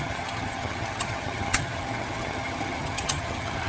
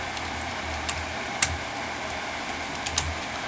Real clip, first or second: second